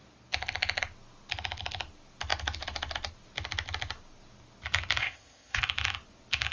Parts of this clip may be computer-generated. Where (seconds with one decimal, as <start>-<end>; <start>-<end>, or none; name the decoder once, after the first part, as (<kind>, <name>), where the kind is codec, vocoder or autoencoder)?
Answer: 5.0-5.6 (codec, ZipCodec)